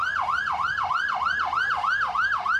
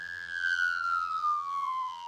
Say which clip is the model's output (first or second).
second